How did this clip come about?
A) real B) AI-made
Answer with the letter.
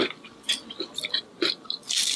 B